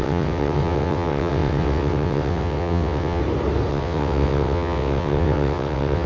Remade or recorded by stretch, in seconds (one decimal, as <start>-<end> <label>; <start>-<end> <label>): 0.0-3.2 remade; 3.2-3.7 recorded; 3.7-6.1 remade